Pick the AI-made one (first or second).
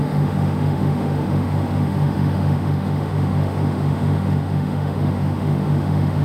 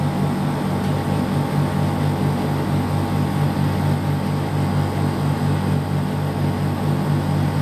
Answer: first